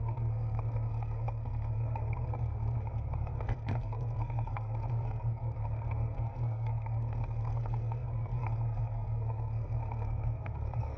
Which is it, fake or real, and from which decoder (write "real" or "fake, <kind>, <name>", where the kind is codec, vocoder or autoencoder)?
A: fake, codec, SNAC